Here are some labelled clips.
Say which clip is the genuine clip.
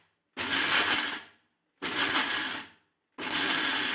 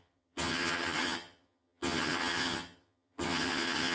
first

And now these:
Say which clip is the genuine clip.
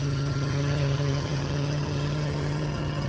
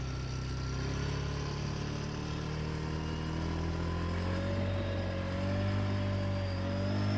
second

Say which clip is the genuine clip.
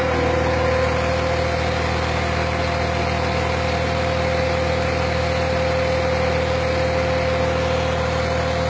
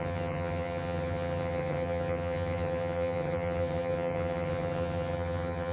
first